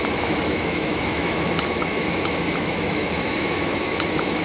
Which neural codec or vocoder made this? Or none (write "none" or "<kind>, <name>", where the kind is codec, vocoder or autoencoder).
autoencoder, DAC-VAE